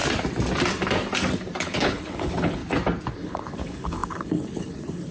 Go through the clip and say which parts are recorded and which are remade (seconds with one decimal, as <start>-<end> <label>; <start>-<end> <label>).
0.0-1.6 recorded; 1.6-2.6 remade; 2.6-3.1 recorded; 3.1-5.1 remade